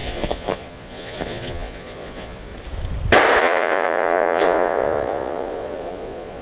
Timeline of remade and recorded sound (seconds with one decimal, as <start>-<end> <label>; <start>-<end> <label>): 0.0-2.5 remade; 2.5-3.4 recorded; 3.4-6.4 remade